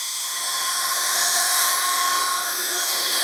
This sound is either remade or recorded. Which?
remade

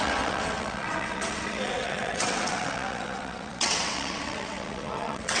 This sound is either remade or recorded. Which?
remade